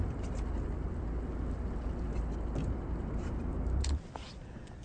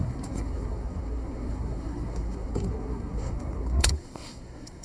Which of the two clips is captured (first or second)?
first